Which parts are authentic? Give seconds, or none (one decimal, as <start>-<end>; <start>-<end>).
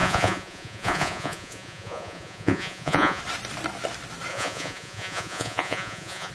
3.2-4.3